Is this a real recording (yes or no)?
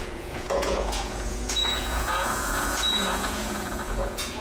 no